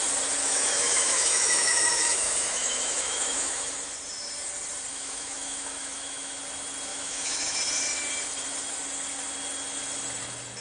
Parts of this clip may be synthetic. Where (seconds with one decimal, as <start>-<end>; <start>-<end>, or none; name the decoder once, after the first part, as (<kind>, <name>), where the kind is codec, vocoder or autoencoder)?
0.4-3.7 (autoencoder, DAC-VAE); 4.9-6.4; 6.9-7.6